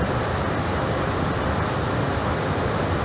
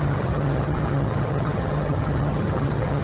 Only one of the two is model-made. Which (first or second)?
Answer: second